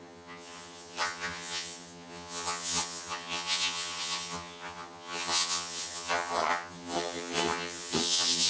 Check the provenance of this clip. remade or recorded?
remade